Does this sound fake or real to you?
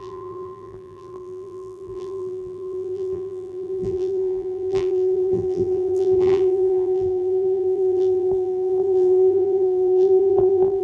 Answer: fake